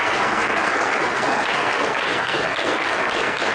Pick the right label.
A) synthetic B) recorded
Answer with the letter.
A